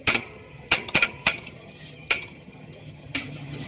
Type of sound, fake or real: fake